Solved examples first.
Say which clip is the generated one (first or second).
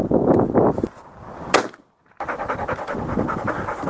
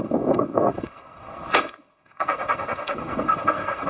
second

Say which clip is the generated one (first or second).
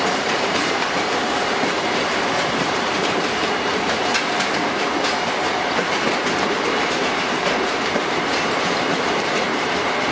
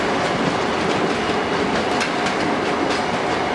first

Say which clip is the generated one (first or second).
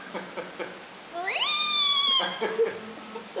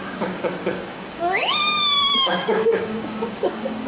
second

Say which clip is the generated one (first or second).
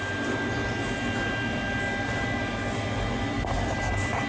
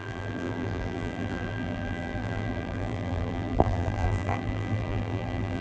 second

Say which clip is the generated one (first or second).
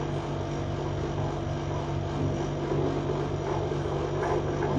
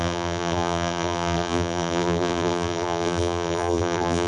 second